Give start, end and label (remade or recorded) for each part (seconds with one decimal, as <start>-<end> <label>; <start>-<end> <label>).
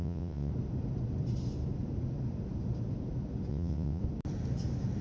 0.0-0.5 remade; 0.5-3.5 recorded; 3.5-4.0 remade; 4.0-5.0 recorded